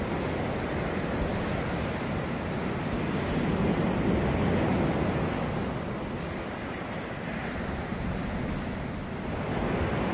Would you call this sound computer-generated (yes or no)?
no